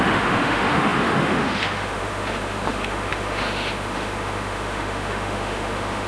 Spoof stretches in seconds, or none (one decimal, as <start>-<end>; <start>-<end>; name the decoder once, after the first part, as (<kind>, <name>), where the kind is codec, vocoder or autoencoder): 0.0-6.1 (autoencoder, DAC-VAE)